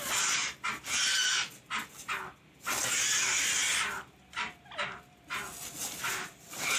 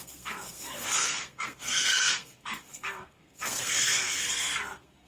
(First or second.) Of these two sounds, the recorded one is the first